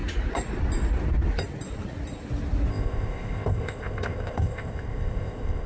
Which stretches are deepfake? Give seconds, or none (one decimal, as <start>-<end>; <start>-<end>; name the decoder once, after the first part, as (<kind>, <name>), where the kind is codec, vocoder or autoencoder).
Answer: 2.7-5.7 (codec, ZipCodec)